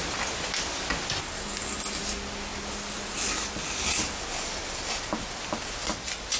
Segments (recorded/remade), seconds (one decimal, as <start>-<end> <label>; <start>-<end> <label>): 0.0-6.4 recorded

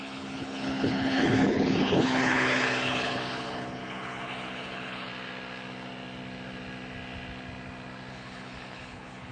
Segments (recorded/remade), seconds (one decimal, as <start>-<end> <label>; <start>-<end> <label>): 0.0-5.1 remade; 5.1-8.1 recorded; 8.1-9.3 remade

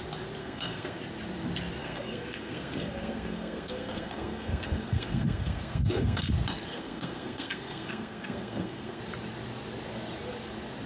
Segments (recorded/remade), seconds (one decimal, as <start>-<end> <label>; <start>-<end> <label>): 0.0-0.4 recorded; 0.4-1.0 remade; 1.0-1.8 recorded; 1.8-6.3 remade; 6.3-6.7 recorded; 6.7-9.0 remade; 9.0-10.9 recorded